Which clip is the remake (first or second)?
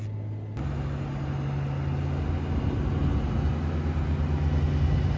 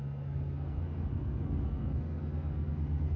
second